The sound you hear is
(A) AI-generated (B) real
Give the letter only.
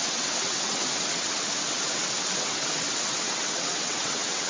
A